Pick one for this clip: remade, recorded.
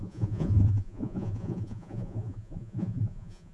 remade